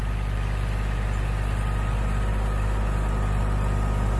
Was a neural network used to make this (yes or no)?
no